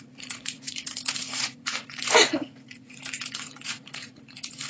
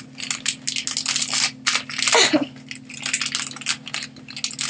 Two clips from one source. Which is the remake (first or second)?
first